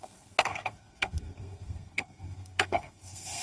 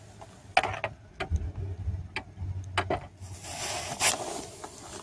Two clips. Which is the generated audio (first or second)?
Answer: first